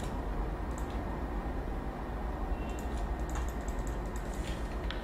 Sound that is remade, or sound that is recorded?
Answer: recorded